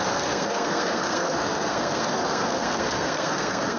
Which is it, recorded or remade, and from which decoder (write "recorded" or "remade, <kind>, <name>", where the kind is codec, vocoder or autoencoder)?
remade, codec, SNAC